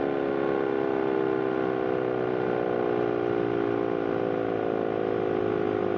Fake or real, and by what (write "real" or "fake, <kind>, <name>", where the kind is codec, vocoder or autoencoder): real